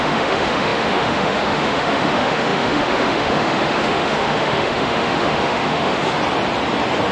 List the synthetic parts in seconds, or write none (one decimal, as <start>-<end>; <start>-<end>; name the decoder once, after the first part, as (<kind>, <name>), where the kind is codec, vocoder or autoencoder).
0.0-6.2 (autoencoder, DAC-VAE)